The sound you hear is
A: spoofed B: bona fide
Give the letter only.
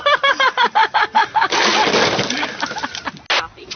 B